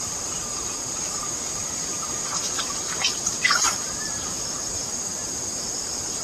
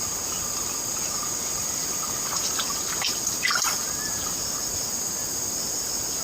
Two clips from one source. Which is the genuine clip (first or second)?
second